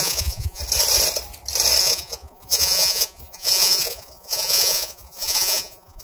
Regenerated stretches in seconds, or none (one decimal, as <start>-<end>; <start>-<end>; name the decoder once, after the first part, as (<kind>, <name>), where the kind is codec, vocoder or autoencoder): 0.0-0.6 (vocoder, Vocos); 1.8-6.0